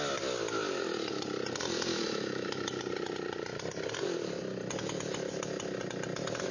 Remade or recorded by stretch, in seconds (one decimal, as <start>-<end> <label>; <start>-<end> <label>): 0.0-1.9 recorded; 1.9-2.8 remade; 2.8-6.5 recorded